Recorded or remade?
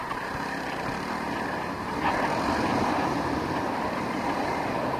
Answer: recorded